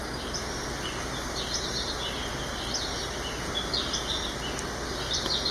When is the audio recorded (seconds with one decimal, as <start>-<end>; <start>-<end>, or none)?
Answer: 0.0-5.5